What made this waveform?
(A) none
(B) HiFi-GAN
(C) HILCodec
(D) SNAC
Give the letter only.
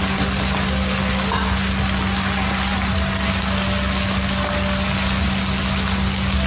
A